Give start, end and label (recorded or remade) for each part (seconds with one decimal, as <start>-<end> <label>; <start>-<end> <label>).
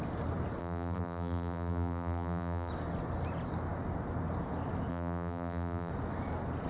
0.0-0.6 recorded; 0.6-2.7 remade; 2.7-4.9 recorded; 4.9-5.9 remade; 5.9-6.7 recorded